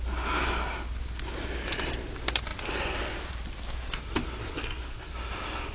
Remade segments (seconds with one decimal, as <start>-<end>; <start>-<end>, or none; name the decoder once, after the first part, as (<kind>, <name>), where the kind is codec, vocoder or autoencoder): 4.4-5.1 (codec, SNAC)